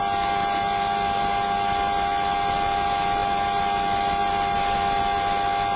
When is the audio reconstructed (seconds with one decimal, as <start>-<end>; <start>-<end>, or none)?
none